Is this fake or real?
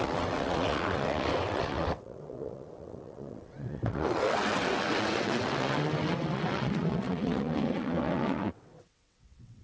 fake